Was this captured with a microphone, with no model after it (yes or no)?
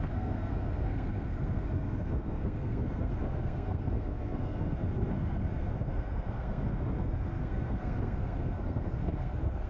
no